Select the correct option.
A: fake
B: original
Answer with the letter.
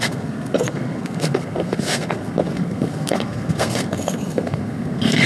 A